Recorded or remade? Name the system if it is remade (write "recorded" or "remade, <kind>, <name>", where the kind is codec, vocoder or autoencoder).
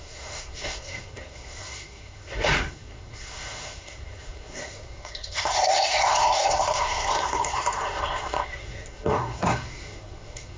remade, codec, SNAC